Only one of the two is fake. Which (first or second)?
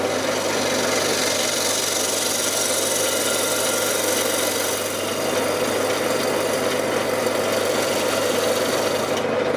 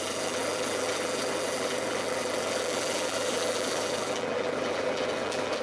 second